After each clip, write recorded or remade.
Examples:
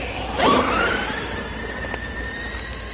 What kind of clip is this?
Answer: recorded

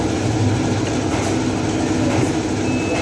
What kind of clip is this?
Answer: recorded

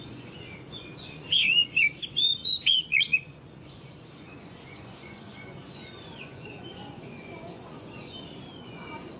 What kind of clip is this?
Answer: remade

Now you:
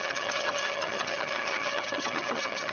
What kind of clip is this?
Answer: remade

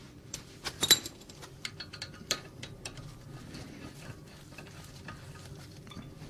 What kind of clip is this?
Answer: remade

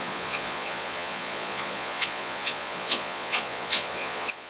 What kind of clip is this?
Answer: remade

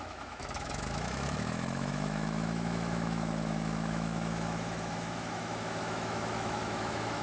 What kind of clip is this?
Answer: remade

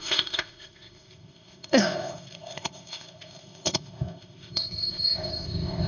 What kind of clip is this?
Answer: remade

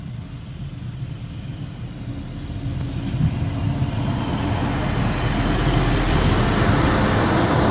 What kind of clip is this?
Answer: recorded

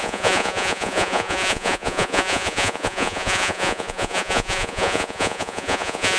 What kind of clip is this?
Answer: remade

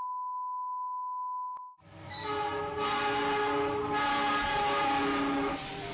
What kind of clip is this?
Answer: recorded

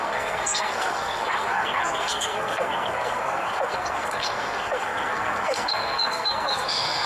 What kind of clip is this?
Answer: remade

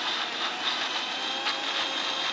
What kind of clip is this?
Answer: recorded